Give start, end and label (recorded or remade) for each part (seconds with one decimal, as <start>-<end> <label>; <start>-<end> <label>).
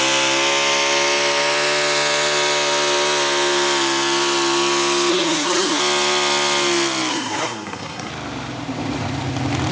0.0-5.1 recorded; 5.1-5.8 remade; 5.8-7.1 recorded; 7.1-8.1 remade; 8.1-9.7 recorded